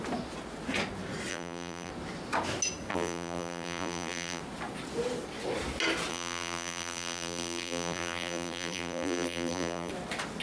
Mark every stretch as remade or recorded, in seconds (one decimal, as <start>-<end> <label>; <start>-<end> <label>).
0.0-1.3 recorded; 1.3-1.9 remade; 1.9-2.9 recorded; 2.9-4.4 remade; 4.4-6.1 recorded; 6.1-9.9 remade; 9.9-10.4 recorded